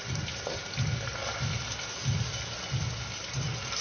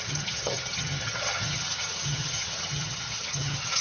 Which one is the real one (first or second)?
first